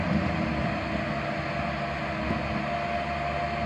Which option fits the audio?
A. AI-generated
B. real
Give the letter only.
B